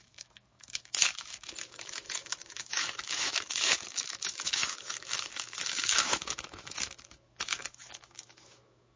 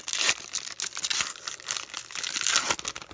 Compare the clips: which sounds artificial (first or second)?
first